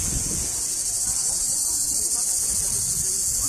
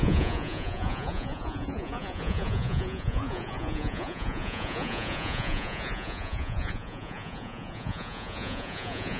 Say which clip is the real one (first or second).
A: first